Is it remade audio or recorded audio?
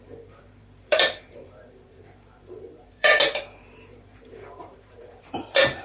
remade